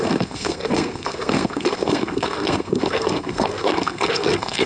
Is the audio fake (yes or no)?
yes